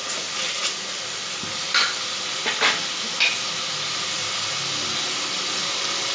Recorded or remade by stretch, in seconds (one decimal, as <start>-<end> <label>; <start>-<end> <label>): 0.0-6.1 recorded

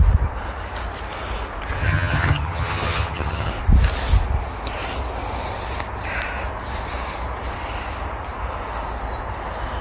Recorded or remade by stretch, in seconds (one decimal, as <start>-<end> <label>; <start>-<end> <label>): 0.0-1.8 recorded; 1.8-3.5 remade; 3.5-9.8 recorded

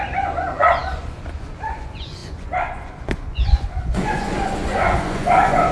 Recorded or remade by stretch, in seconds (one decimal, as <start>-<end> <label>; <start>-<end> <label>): 0.0-5.7 remade

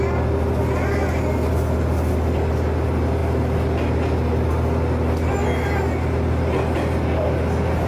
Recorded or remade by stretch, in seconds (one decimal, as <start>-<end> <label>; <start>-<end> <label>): 0.0-7.9 recorded

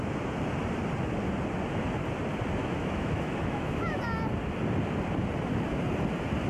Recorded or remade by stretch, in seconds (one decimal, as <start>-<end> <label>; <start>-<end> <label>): 0.0-2.6 recorded; 2.6-4.0 remade; 4.0-6.5 recorded